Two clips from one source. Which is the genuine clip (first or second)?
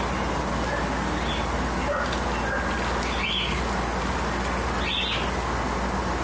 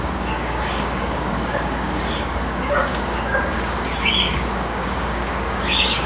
first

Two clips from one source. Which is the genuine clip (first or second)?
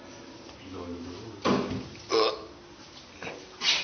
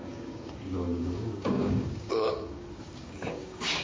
first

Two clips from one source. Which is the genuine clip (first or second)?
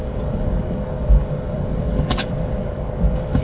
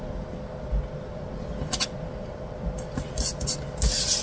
second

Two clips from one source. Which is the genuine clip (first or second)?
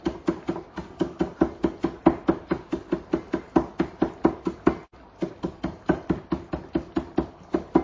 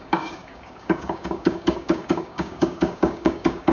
first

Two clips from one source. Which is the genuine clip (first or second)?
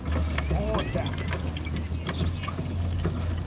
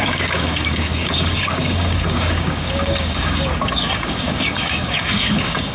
first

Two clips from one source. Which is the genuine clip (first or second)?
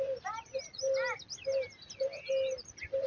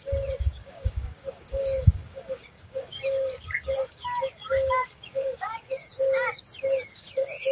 first